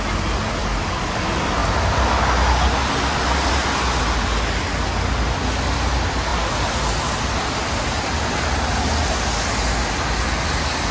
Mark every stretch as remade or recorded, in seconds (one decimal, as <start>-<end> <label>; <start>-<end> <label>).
0.0-0.6 recorded; 0.6-1.2 remade; 1.2-10.9 recorded